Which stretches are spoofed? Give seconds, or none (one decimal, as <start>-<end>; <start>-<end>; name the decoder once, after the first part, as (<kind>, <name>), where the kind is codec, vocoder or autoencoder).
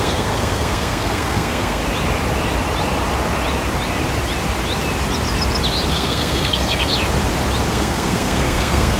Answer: 0.0-1.8 (codec, SNAC); 5.9-6.9; 7.7-9.0